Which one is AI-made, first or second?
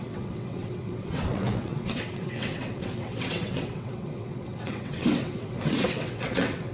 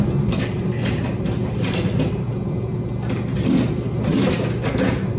first